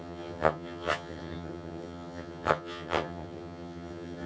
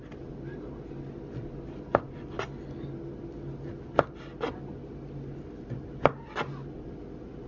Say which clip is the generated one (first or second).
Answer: first